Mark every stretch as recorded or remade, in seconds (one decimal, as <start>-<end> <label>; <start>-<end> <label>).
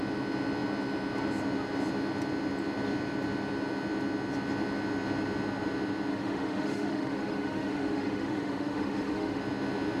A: 0.0-6.1 recorded; 6.1-9.4 remade; 9.4-10.0 recorded